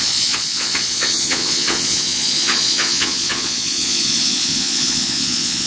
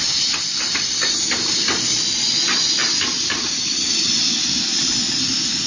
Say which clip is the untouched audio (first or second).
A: second